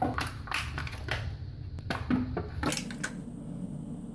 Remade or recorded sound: recorded